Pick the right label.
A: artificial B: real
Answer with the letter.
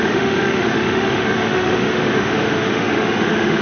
A